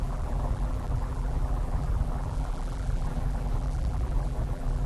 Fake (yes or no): yes